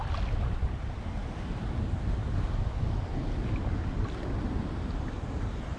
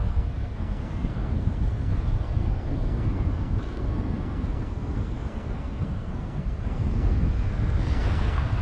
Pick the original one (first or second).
first